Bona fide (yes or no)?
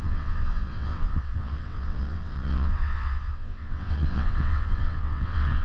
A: no